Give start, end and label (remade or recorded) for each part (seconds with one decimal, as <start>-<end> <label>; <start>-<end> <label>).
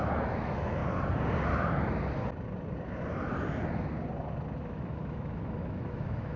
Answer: 0.0-0.8 remade; 0.8-4.6 recorded; 4.6-6.4 remade